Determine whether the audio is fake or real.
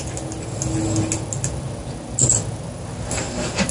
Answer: real